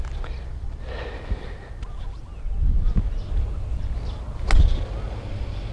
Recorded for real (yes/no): yes